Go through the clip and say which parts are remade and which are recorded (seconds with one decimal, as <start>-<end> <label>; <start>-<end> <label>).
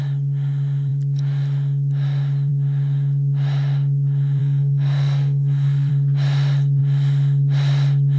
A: 0.0-4.4 recorded; 4.4-5.9 remade; 5.9-8.2 recorded